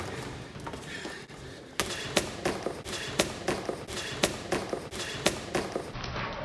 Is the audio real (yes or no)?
yes